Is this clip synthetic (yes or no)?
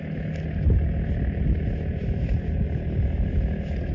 no